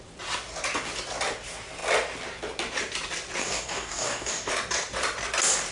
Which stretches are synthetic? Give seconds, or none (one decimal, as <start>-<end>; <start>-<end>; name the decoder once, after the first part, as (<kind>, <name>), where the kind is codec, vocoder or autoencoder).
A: 3.4-4.5 (codec, DAC)